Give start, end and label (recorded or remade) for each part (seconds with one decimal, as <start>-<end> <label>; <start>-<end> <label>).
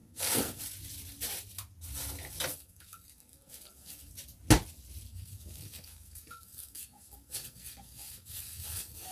0.0-0.6 remade; 0.6-2.5 recorded; 2.5-4.1 remade; 4.1-5.1 recorded; 5.1-9.1 remade